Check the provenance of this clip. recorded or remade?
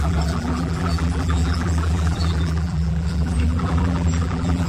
remade